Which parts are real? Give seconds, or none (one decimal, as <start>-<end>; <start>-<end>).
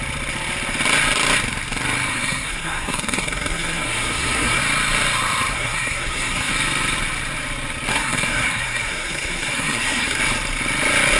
0.0-2.1; 4.6-5.5; 6.5-7.9; 10.2-11.2